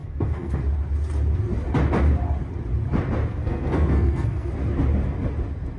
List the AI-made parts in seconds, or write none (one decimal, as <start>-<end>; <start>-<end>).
0.0-0.6; 3.3-4.5